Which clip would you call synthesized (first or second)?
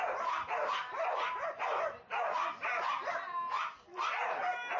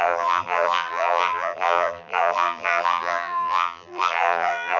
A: second